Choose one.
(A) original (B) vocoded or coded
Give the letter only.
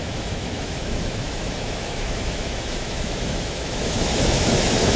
B